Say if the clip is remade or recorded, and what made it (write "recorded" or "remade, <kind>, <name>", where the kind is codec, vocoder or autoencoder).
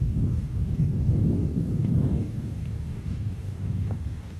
remade, codec, DAC